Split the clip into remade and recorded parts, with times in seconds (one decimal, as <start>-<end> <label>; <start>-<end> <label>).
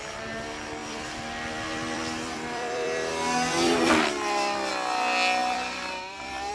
0.0-0.8 recorded; 0.8-4.7 remade; 4.7-5.4 recorded; 5.4-6.5 remade